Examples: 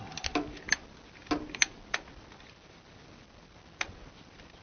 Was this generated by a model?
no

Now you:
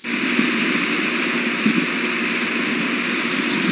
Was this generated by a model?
no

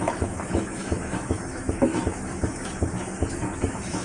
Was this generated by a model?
yes